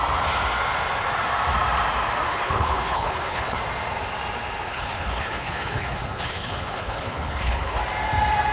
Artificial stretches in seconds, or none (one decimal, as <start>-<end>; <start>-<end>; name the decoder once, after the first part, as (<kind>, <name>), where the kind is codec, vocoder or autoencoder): 2.3-3.6 (codec, HILCodec); 4.7-7.8